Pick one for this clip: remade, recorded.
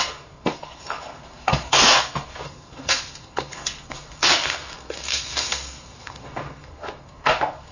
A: remade